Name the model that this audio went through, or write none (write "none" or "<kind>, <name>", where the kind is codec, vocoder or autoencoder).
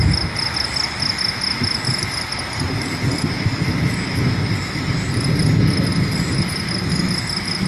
none